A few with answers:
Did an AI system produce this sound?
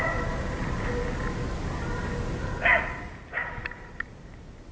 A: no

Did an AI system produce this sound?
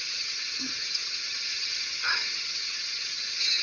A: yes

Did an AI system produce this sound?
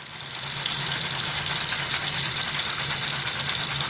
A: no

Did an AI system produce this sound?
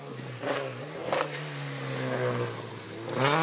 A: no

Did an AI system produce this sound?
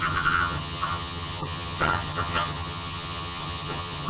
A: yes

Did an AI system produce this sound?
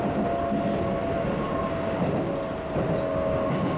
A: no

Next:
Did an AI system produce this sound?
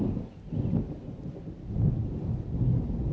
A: no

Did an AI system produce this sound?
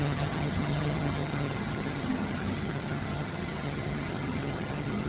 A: yes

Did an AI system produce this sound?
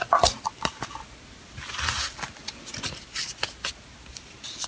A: no